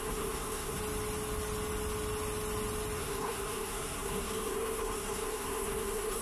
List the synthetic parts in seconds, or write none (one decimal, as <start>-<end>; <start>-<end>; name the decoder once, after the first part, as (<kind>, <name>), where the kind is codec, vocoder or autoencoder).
0.0-0.8 (codec, SNAC); 3.0-6.2